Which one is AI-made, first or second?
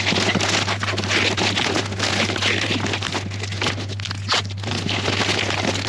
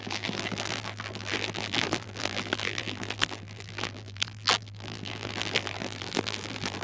second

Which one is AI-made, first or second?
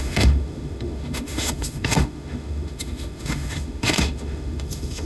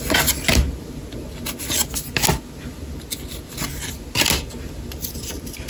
first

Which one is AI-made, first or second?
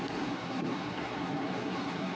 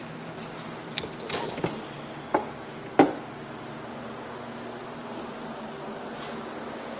first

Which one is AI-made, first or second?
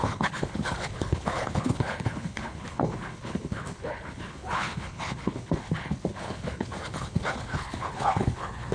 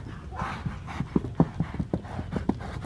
first